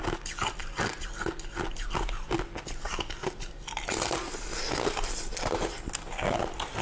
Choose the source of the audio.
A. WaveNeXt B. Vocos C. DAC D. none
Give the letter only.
D